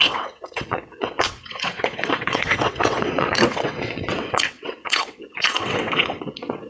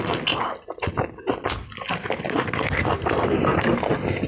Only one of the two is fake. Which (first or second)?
first